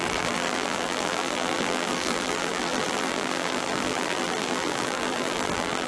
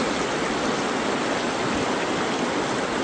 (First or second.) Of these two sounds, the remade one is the first